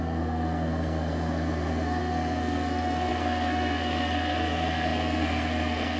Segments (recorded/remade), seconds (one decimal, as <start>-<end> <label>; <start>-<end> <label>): 0.0-6.0 remade